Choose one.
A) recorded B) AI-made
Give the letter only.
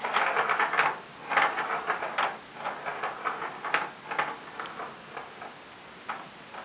A